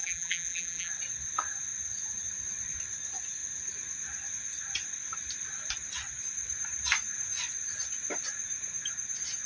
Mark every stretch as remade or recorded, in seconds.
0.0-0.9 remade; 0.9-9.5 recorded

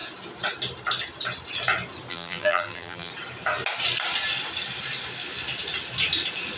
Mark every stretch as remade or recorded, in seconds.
0.0-2.1 recorded; 2.1-3.1 remade; 3.1-6.6 recorded

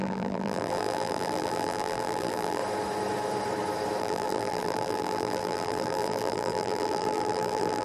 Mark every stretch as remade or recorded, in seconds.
0.0-2.6 remade; 2.6-4.0 recorded; 4.0-7.8 remade